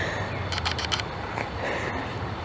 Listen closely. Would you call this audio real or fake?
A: real